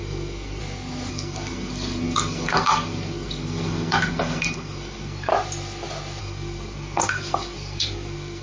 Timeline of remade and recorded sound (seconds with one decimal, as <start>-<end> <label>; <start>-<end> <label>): 0.0-0.6 remade; 0.6-1.1 recorded; 1.1-5.3 remade; 5.3-6.2 recorded; 6.2-8.4 remade